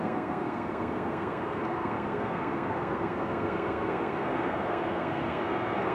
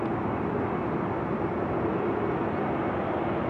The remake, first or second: first